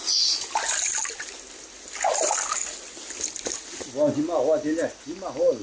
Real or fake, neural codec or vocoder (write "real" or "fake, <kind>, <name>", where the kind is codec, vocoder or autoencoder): real